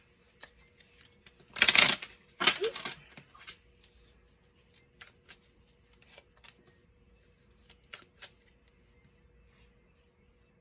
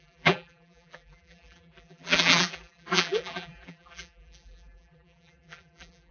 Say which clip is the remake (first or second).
second